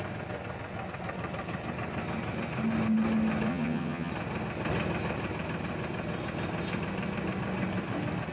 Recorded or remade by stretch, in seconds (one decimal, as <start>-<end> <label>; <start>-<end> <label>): 0.0-3.5 recorded; 3.5-4.1 remade; 4.1-8.3 recorded